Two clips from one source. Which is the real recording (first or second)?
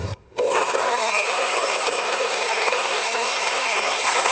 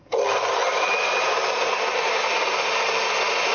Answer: second